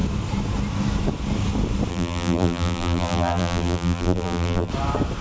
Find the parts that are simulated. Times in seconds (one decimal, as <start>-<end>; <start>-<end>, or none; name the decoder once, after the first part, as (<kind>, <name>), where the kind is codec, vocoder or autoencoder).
1.9-4.7 (vocoder, BigVGAN v2)